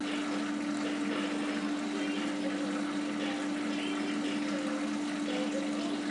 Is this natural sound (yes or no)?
yes